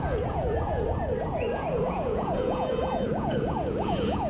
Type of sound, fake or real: fake